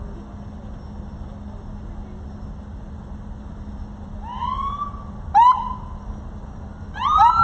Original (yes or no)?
yes